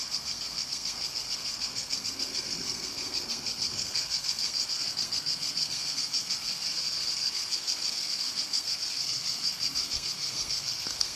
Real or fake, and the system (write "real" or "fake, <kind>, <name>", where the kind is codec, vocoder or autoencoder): fake, codec, SNAC